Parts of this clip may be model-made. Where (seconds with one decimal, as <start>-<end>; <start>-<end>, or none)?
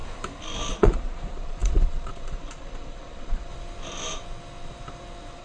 0.7-3.5